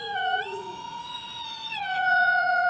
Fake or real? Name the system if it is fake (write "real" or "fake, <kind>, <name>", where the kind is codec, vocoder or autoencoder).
fake, vocoder, Vocos